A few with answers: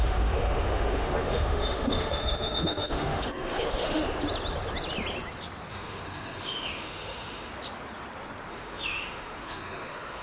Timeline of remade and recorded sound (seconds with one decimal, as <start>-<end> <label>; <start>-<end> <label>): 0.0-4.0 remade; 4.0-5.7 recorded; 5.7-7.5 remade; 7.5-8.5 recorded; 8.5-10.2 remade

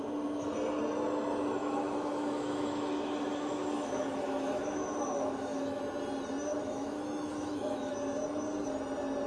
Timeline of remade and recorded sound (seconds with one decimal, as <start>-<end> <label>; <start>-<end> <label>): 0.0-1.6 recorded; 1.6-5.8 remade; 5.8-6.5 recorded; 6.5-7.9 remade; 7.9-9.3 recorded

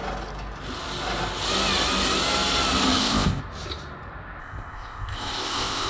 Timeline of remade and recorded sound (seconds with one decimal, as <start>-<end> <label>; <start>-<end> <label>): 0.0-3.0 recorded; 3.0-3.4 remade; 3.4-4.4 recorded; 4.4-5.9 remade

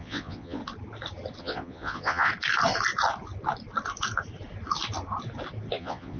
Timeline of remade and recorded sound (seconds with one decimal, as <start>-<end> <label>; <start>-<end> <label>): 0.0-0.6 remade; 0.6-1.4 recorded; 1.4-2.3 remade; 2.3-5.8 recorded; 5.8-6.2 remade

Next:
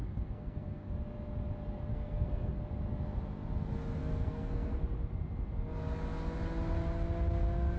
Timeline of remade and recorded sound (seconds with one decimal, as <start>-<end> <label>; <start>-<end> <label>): 0.0-0.9 remade; 0.9-1.9 recorded; 1.9-2.6 remade; 2.6-4.0 recorded; 4.0-4.8 remade; 4.8-7.8 recorded

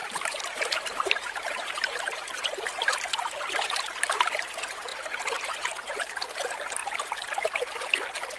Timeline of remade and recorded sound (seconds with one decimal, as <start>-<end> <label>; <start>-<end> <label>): 0.0-4.0 remade; 4.0-4.9 recorded; 4.9-6.2 remade; 6.2-6.8 recorded; 6.8-7.8 remade; 7.8-8.4 recorded

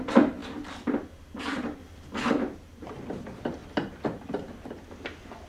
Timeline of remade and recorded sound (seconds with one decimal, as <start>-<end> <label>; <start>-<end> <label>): 0.0-1.8 remade; 1.8-2.3 recorded; 2.3-5.5 remade